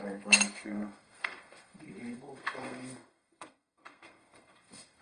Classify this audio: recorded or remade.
remade